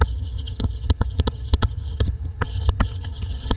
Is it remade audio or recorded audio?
remade